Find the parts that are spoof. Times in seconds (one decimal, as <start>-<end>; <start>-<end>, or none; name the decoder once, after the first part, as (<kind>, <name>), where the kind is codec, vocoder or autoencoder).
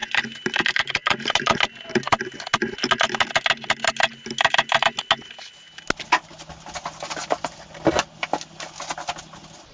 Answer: none